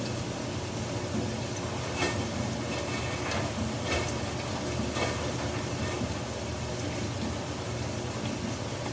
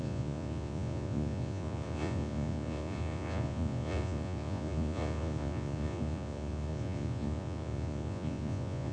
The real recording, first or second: first